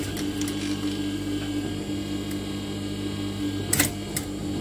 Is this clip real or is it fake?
real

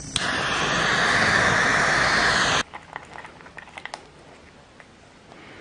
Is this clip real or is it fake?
real